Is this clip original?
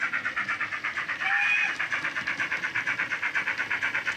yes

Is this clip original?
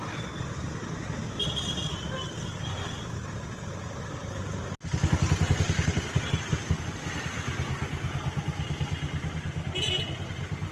yes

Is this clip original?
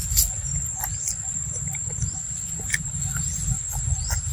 yes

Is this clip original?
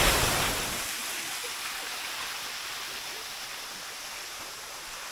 yes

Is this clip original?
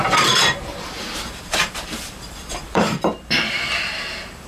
no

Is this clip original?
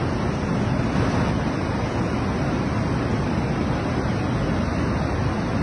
yes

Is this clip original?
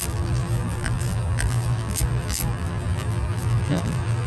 no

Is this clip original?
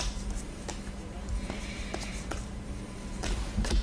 no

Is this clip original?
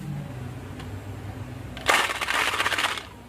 yes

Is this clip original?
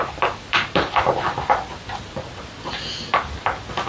yes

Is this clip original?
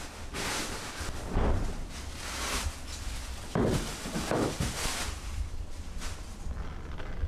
yes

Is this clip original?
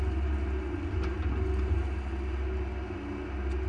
yes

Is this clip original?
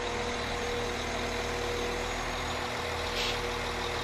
yes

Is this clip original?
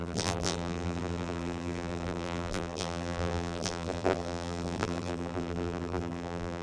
no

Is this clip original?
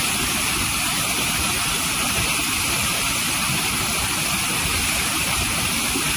yes